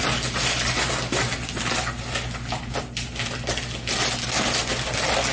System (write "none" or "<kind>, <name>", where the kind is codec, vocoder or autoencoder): none